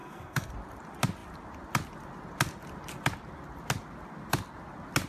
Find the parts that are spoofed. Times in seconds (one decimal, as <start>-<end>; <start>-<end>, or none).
0.0-0.5